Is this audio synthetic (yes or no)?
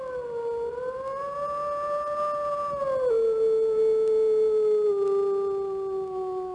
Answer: no